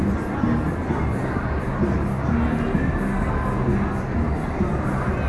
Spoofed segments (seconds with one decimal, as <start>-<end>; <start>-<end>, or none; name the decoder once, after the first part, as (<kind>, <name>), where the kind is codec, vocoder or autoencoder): none